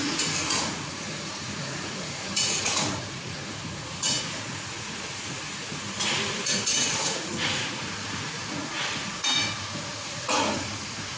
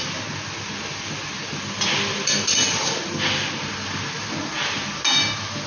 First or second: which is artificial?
first